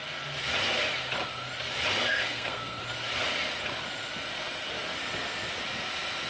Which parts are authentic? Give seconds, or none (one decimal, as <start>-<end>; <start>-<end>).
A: 0.0-2.1; 2.8-6.3